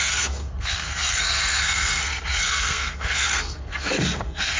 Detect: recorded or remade remade